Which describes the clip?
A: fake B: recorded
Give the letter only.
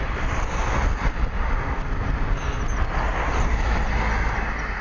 B